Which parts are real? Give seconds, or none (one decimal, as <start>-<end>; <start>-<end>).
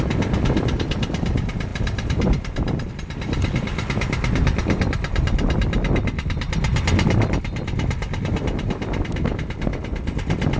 0.0-10.6